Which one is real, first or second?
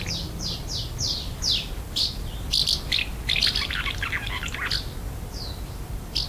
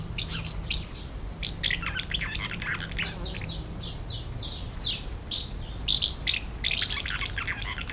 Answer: second